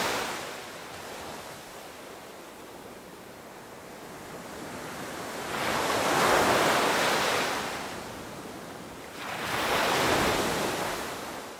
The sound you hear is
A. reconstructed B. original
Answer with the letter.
B